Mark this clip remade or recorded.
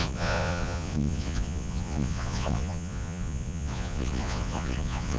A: remade